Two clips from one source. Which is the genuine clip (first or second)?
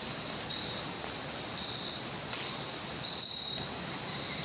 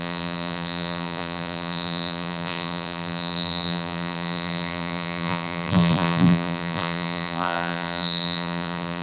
first